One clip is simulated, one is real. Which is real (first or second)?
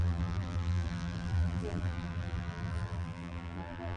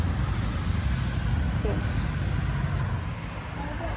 second